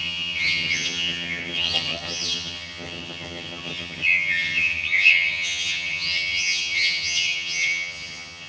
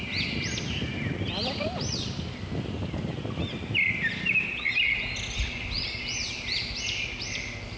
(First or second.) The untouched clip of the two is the second